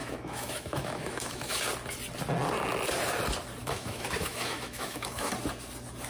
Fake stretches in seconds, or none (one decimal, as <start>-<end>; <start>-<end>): 0.0-1.6; 3.6-5.3

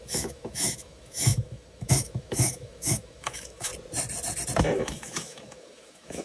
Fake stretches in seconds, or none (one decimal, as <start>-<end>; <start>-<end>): 0.0-3.7; 4.6-6.2

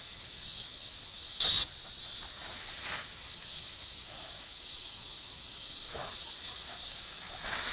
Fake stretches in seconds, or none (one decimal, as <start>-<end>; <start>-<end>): 0.0-1.7; 2.6-7.7

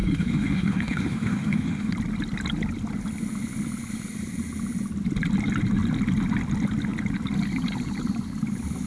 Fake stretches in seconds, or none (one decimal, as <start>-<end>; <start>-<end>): 0.0-1.9

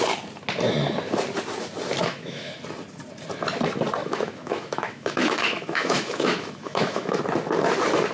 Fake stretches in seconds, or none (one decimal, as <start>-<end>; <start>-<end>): 2.0-2.6; 4.0-7.2